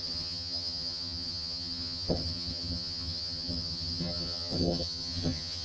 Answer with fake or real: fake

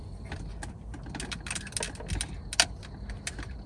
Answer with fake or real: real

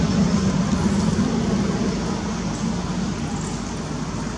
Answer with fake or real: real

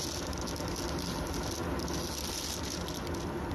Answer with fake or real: real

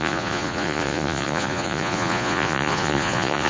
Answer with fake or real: fake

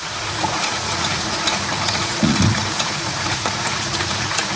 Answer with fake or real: fake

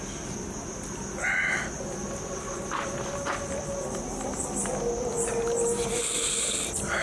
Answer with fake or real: real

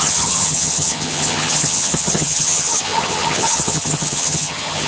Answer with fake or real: fake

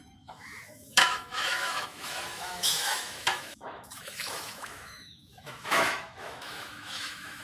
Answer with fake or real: fake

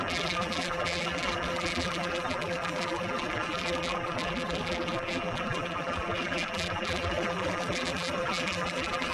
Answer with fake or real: fake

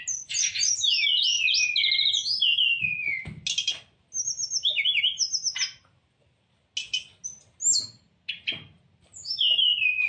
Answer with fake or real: real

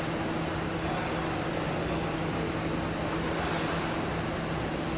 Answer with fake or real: real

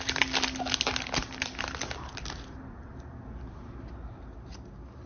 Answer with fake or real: real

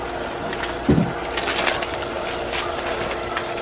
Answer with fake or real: real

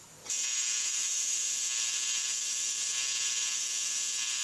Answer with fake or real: fake